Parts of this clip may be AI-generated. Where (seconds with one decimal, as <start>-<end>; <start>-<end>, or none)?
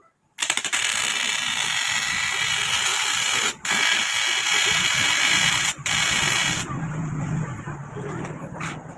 none